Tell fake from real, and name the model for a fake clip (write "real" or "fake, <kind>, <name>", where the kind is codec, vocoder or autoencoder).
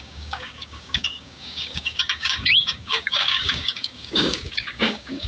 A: fake, codec, DAC